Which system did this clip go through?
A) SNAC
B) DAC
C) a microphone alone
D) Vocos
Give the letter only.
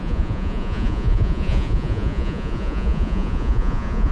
D